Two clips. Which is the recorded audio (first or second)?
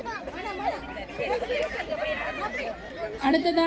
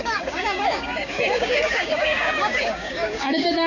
first